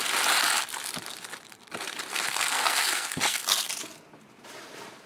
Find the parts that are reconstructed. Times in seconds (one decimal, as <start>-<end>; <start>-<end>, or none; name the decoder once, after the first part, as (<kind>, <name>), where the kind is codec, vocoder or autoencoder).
2.1-3.7 (codec, SNAC)